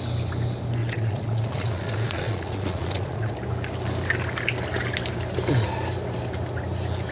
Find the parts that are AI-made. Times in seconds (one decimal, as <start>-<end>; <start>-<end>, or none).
0.8-3.3